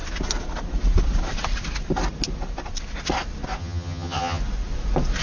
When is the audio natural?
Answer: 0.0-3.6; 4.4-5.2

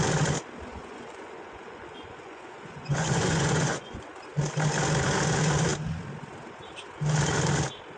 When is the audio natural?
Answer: 0.0-0.7; 4.1-8.0

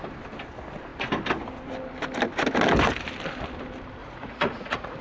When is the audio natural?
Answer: 0.0-4.0